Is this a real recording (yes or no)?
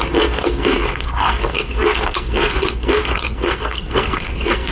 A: no